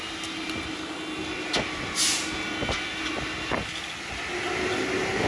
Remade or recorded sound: recorded